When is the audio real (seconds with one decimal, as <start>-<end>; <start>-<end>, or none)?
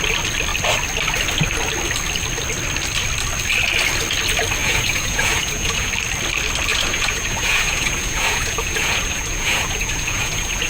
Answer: 0.0-4.6; 5.9-6.7